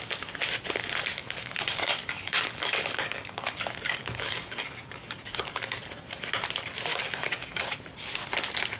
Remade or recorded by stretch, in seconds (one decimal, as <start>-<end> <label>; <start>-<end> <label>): 0.0-1.2 recorded; 1.2-5.8 remade; 5.8-6.9 recorded; 6.9-7.6 remade; 7.6-8.8 recorded